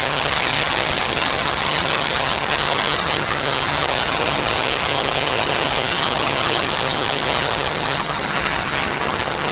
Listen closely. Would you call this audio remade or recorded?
remade